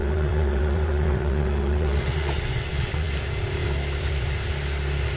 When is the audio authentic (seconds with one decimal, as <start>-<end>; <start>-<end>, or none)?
3.1-5.2